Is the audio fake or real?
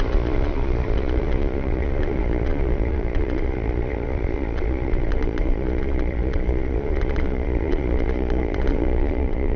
fake